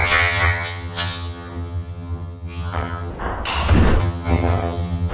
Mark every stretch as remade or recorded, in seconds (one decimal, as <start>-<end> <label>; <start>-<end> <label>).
0.0-3.1 remade; 3.1-4.0 recorded; 4.0-5.1 remade